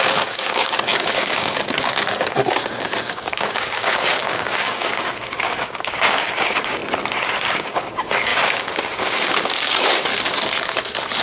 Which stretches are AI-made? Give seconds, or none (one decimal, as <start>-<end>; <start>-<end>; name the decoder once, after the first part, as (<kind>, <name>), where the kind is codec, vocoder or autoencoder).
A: 0.0-6.8 (codec, DAC); 7.4-10.1